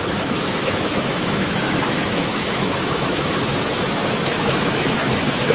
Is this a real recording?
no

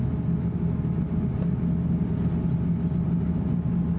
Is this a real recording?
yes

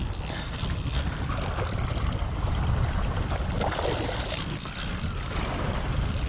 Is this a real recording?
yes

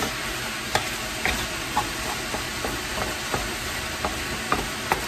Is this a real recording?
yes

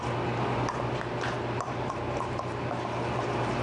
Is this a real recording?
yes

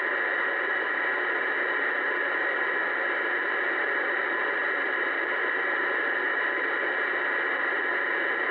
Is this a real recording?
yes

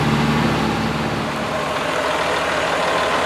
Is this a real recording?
yes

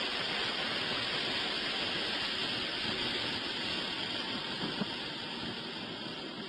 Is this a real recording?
yes